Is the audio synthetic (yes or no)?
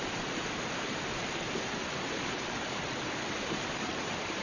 yes